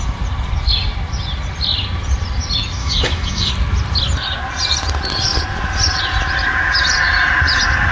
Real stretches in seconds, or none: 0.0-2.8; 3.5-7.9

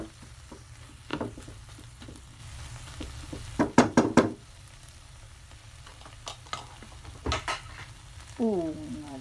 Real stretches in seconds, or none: 1.1-1.7; 2.4-3.6; 5.9-8.0

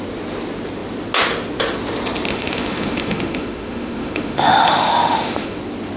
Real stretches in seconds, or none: 0.0-2.3; 5.6-6.0

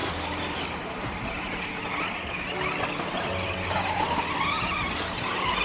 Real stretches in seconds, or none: 1.2-5.6

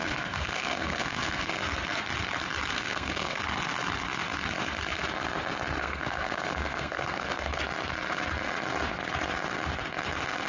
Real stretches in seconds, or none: 1.5-2.7; 3.4-5.8; 7.6-10.5

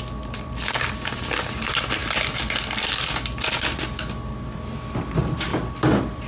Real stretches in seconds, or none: 0.0-6.3

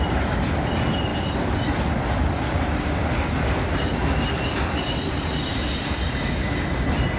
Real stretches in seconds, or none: 0.0-7.2